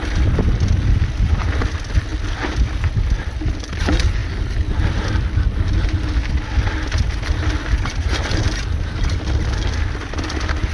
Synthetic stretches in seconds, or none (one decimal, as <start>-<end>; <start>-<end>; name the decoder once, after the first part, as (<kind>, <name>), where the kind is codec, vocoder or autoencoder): none